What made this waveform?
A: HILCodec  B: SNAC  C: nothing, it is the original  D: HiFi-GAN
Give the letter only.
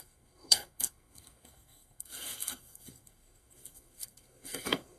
B